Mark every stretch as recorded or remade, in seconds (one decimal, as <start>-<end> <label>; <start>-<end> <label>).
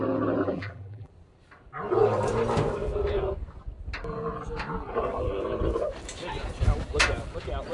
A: 0.0-0.4 recorded; 0.4-1.1 remade; 1.1-7.7 recorded